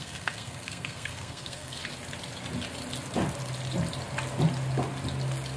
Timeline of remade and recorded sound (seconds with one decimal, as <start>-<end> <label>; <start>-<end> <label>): 0.0-1.8 remade; 1.8-5.6 recorded

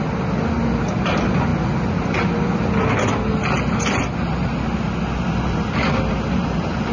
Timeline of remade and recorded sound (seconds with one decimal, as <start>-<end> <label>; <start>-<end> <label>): 0.0-6.9 recorded

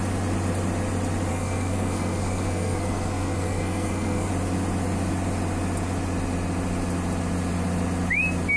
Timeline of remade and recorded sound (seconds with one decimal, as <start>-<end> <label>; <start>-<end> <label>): 0.0-1.3 recorded; 1.3-4.3 remade; 4.3-8.6 recorded

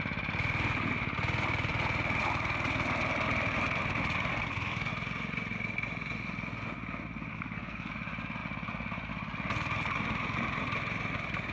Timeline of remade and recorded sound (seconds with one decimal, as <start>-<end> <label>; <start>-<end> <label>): 0.0-4.3 recorded; 4.3-4.9 remade; 4.9-7.3 recorded; 7.3-7.9 remade; 7.9-11.5 recorded